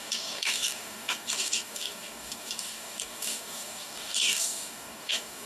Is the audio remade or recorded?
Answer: remade